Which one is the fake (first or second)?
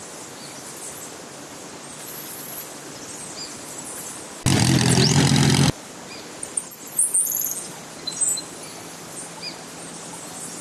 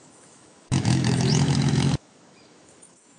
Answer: second